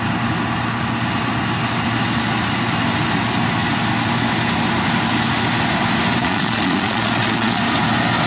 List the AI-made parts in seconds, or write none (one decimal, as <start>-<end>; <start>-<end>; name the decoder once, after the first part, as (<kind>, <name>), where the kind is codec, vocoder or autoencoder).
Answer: 6.2-7.6 (vocoder, Vocos)